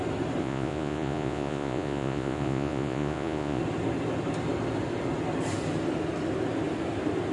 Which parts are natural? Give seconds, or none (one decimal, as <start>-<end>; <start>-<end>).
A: 0.0-0.4; 3.6-7.3